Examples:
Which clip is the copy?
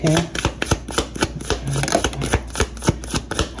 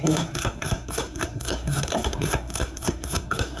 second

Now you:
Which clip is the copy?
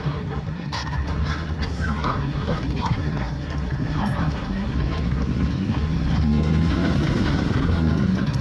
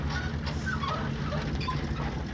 first